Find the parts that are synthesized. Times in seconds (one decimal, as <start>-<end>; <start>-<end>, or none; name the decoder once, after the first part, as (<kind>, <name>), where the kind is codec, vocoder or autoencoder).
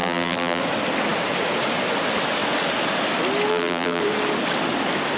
0.0-0.6 (vocoder, BigVGAN v2); 3.5-4.0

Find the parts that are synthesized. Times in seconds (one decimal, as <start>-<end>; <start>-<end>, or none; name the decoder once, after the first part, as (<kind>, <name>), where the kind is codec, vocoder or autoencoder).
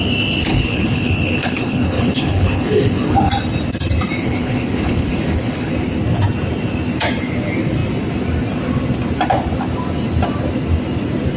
0.5-3.3 (codec, HILCodec); 4.2-5.7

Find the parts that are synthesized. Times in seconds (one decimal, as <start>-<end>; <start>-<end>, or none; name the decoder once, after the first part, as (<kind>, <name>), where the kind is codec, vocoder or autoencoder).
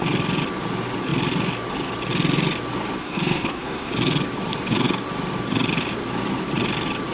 3.0-3.9 (codec, SNAC)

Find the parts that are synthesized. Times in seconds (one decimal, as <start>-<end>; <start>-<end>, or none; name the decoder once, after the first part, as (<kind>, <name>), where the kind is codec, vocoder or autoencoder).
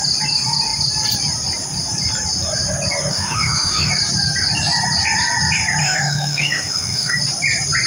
3.1-3.9 (autoencoder, DAC-VAE); 5.8-7.2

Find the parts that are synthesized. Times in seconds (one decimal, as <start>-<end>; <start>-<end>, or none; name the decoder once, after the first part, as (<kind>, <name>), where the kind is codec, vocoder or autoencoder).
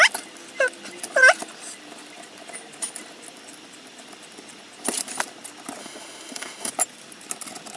5.8-6.7 (autoencoder, DAC-VAE)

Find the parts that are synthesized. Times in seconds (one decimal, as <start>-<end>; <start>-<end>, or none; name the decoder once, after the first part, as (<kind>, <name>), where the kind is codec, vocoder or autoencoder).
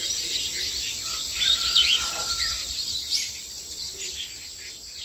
1.3-3.3 (vocoder, BigVGAN v2)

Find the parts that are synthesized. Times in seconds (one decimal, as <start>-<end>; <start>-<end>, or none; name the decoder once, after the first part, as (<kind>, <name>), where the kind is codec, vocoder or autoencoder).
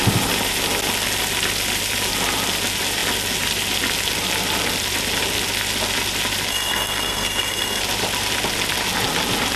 6.5-7.8 (codec, SNAC)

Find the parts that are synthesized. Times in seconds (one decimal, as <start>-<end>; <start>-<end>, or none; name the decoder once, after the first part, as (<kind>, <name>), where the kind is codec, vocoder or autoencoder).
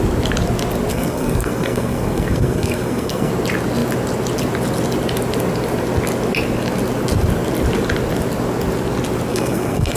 0.9-3.3 (codec, SNAC); 9.3-10.0